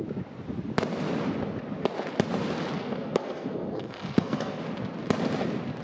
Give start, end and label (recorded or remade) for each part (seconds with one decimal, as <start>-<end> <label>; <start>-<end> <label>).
0.0-2.8 recorded; 2.8-4.6 remade; 4.6-5.8 recorded